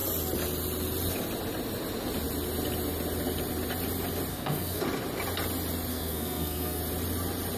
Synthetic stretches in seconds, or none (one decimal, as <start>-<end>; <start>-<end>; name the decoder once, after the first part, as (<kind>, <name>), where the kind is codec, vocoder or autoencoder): 4.3-4.8 (codec, SNAC); 5.9-6.8

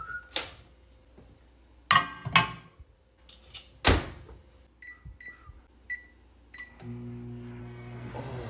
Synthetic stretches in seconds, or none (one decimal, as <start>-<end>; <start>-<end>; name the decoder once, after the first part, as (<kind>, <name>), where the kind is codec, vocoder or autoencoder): 7.6-8.1 (codec, SNAC)

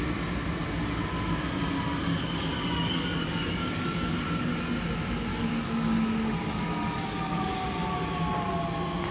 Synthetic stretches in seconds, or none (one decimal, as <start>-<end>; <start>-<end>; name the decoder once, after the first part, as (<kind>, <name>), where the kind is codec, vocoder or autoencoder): 2.0-4.5 (codec, DAC); 5.3-7.5

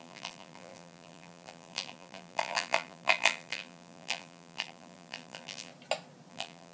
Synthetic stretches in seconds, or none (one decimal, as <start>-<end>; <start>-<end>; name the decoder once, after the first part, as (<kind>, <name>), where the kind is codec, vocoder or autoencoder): 0.0-5.7 (vocoder, BigVGAN v2); 6.3-6.7

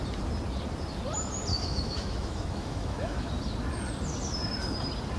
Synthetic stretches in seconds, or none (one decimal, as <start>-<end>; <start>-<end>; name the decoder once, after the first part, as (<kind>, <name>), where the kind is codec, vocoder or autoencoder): 1.5-3.3 (autoencoder, DAC-VAE)

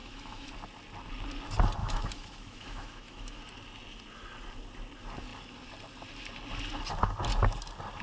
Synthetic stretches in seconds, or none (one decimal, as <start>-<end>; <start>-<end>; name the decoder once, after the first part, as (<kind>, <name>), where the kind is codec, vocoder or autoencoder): 0.0-0.5 (autoencoder, DAC-VAE); 1.8-3.4

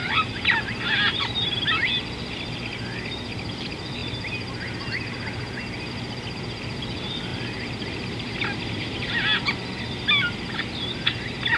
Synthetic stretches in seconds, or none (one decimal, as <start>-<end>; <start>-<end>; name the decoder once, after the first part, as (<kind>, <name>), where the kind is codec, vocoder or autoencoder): 0.0-2.0 (vocoder, BigVGAN v2)